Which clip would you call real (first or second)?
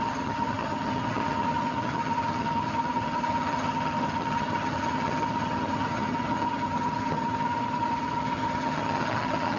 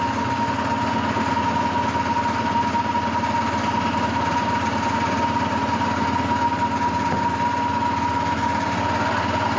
second